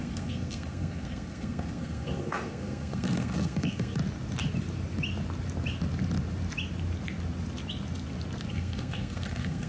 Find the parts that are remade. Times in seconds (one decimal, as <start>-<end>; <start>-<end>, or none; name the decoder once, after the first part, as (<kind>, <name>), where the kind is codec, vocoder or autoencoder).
0.0-4.0 (codec, SNAC); 8.5-9.7